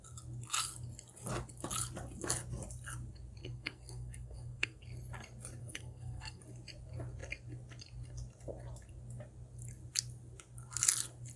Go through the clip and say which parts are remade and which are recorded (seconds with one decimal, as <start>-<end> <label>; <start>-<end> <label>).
0.0-3.4 recorded; 3.4-4.8 remade; 4.8-5.6 recorded; 5.6-6.4 remade; 6.4-11.4 recorded